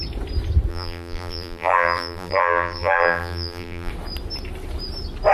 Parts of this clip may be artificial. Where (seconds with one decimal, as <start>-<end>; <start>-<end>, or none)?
0.7-3.9